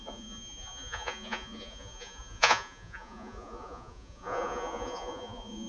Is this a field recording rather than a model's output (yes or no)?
no